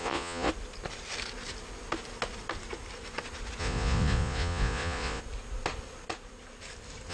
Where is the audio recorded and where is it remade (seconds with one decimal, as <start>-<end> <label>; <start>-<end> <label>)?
0.0-0.5 remade; 0.5-3.6 recorded; 3.6-5.2 remade; 5.2-7.1 recorded